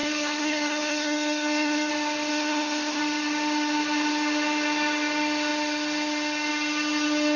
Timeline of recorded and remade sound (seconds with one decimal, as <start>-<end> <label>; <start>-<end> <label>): 0.0-1.9 remade; 1.9-2.3 recorded; 2.3-3.0 remade; 3.0-7.4 recorded